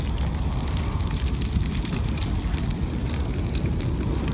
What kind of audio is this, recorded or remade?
recorded